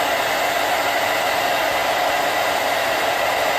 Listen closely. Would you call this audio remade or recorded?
recorded